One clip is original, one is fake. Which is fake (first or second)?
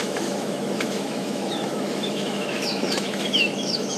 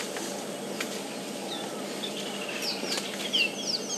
first